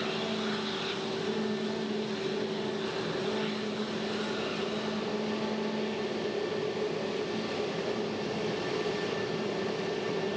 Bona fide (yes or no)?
yes